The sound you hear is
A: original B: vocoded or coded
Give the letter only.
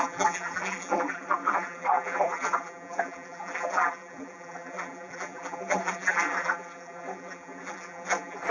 B